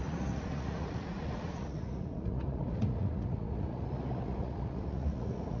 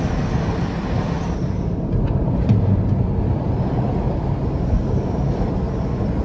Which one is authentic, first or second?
second